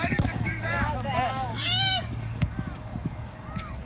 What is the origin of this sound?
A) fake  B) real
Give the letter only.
A